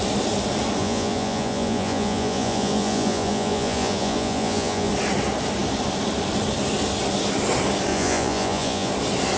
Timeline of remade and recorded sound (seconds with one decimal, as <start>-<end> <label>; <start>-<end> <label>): 0.0-0.8 recorded; 0.8-4.9 remade; 4.9-7.9 recorded; 7.9-8.9 remade; 8.9-9.4 recorded